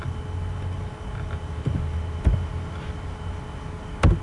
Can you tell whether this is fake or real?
real